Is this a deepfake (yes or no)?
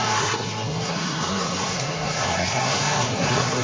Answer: yes